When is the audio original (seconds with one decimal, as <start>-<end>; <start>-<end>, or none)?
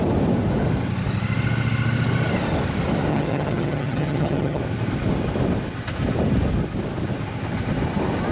0.0-3.1; 4.6-8.3